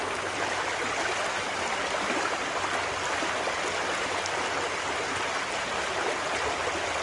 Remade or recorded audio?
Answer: recorded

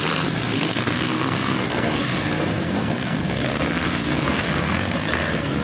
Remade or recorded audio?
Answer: remade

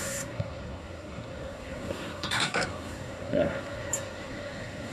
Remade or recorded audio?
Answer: remade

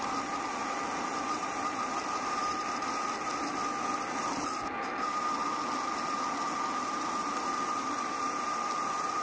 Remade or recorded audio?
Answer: recorded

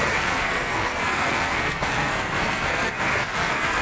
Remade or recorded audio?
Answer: remade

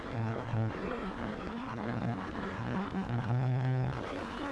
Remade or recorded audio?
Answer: remade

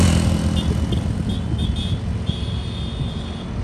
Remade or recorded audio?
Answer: recorded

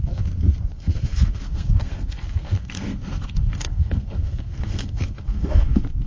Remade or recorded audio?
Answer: remade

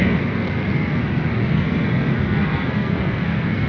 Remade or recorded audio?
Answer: remade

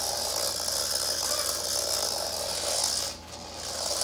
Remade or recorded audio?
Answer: recorded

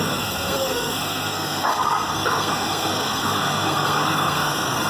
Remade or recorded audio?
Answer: remade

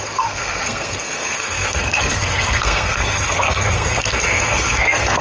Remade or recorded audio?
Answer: remade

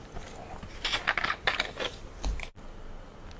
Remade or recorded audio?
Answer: recorded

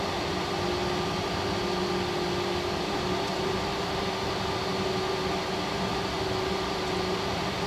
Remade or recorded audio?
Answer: recorded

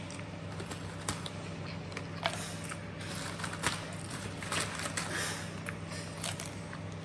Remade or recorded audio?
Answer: recorded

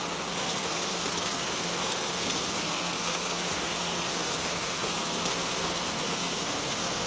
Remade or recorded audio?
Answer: remade